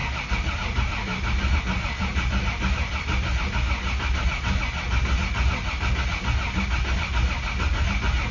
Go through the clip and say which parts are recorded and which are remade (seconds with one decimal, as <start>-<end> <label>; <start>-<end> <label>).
0.0-8.3 recorded